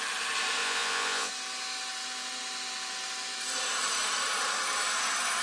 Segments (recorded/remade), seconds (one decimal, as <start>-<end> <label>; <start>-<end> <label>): 0.0-0.6 recorded; 0.6-1.3 remade; 1.3-5.4 recorded